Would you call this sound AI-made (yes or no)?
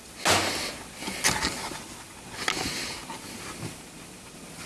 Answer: no